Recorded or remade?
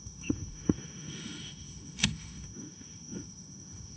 remade